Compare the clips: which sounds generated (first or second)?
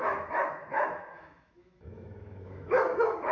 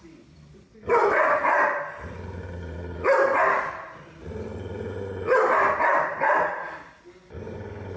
first